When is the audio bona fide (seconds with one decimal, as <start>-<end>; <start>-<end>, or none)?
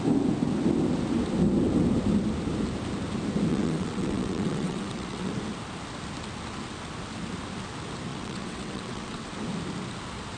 0.0-3.5; 5.3-8.1; 9.3-10.4